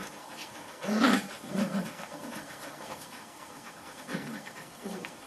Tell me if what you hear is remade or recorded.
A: remade